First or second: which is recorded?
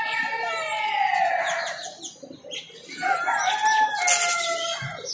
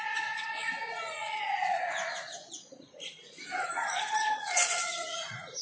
first